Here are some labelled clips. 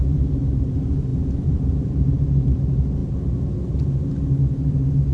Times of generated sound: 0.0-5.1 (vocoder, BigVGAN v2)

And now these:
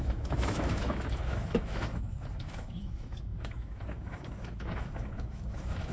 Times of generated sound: 0.0-5.9 (autoencoder, DAC-VAE)

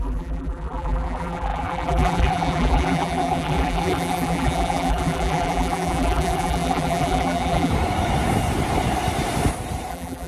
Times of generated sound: 0.0-7.7 (vocoder, BigVGAN v2); 9.9-10.3

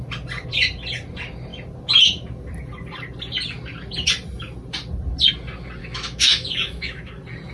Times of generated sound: 5.8-7.1 (autoencoder, DAC-VAE)

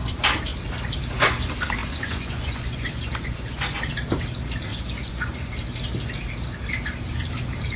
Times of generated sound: 1.8-3.8 (vocoder, Vocos); 4.7-5.5

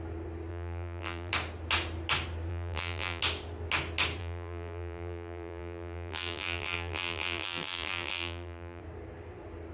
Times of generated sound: 0.5-1.3 (vocoder, BigVGAN v2); 2.5-3.2; 4.2-8.8